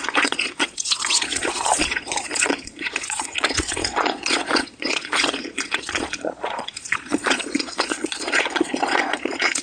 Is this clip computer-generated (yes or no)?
yes